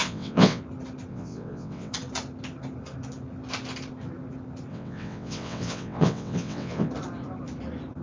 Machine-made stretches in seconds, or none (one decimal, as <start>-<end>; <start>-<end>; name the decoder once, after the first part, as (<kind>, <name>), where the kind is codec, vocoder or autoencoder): 0.0-0.6 (vocoder, WaveNeXt); 1.1-1.9; 4.7-6.9